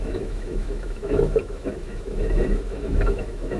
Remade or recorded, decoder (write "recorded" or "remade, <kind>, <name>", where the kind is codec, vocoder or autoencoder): remade, autoencoder, DAC-VAE